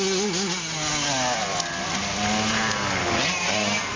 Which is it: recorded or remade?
recorded